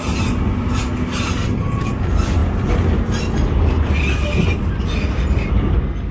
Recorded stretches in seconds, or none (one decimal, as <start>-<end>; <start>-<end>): 0.0-1.4; 1.9-6.1